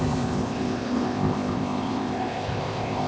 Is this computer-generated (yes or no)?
yes